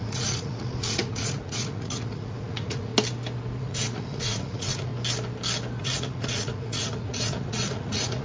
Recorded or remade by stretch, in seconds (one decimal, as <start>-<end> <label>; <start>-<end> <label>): 0.0-2.9 remade; 2.9-3.6 recorded; 3.6-4.9 remade; 4.9-5.8 recorded; 5.8-8.2 remade